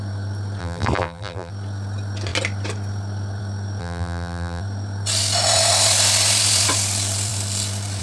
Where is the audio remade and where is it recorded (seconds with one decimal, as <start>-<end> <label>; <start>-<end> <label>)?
0.0-0.6 recorded; 0.6-1.5 remade; 1.5-3.8 recorded; 3.8-4.6 remade; 4.6-8.0 recorded